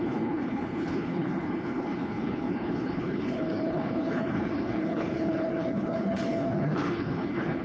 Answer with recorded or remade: remade